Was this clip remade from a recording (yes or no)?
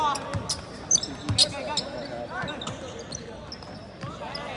no